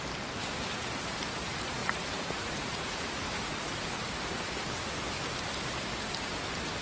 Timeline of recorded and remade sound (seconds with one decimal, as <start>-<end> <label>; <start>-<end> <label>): 0.0-1.8 recorded; 1.8-3.7 remade; 3.7-6.8 recorded

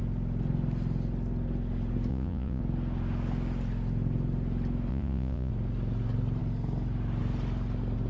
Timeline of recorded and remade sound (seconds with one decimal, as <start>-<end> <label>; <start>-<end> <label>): 0.0-2.1 recorded; 2.1-2.6 remade; 2.6-4.9 recorded; 4.9-5.5 remade; 5.5-8.1 recorded